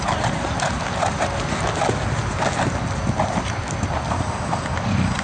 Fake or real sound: real